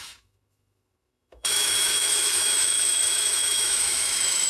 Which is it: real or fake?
fake